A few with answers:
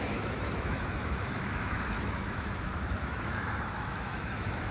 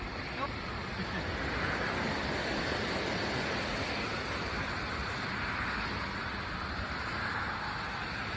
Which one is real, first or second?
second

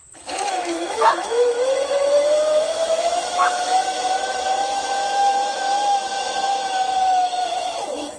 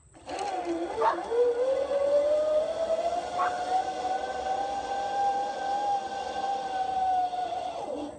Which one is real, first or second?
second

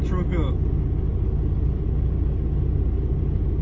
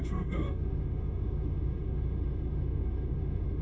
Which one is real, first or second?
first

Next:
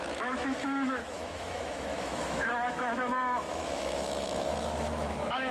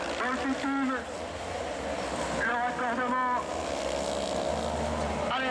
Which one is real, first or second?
second